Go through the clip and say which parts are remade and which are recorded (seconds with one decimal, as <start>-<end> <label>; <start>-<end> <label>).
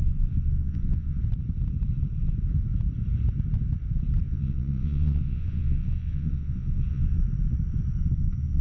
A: 0.0-1.2 remade; 1.2-4.2 recorded; 4.2-7.2 remade; 7.2-8.0 recorded; 8.0-8.6 remade